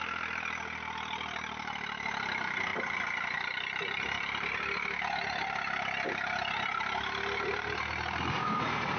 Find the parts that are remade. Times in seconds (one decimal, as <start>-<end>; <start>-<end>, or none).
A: none